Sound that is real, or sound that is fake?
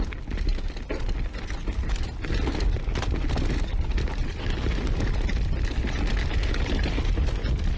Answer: real